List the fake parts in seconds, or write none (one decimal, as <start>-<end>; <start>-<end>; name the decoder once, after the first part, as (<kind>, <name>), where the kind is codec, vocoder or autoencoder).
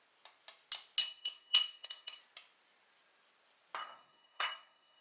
1.0-2.2 (codec, SNAC); 3.8-5.0